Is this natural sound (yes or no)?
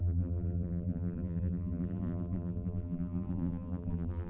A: no